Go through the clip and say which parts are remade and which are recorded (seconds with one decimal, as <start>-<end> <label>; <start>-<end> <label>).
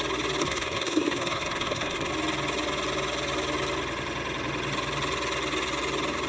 0.0-0.4 recorded; 0.4-2.1 remade; 2.1-6.3 recorded